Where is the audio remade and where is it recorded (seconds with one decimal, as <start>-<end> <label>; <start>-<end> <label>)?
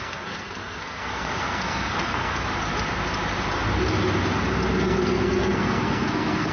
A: 0.0-2.5 remade; 2.5-4.8 recorded; 4.8-6.5 remade